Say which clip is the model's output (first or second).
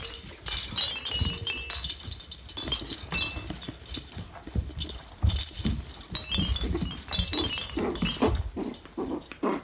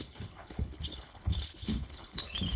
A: second